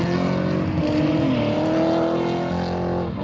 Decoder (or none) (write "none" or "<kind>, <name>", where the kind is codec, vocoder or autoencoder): none